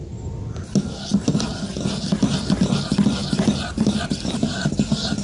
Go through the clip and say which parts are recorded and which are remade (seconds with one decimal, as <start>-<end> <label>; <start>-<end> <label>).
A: 0.0-3.2 recorded; 3.2-4.7 remade; 4.7-5.2 recorded

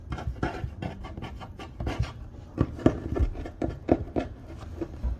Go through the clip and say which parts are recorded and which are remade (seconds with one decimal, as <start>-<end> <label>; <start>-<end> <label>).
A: 0.0-5.2 remade